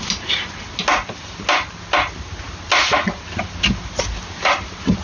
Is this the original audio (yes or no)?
yes